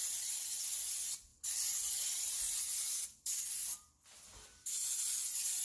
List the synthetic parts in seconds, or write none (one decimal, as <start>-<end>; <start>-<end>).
none